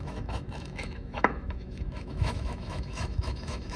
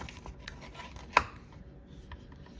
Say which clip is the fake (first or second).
first